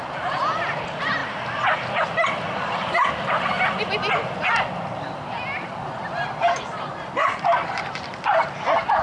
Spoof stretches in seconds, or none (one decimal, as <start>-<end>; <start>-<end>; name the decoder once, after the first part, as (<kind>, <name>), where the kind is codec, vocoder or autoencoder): 6.9-8.1 (vocoder, BigVGAN v2)